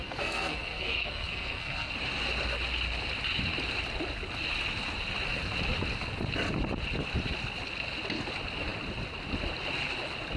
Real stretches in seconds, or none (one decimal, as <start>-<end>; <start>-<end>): 1.9-10.4